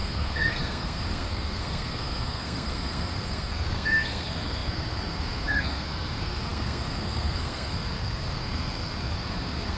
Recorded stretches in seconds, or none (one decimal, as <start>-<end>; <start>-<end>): none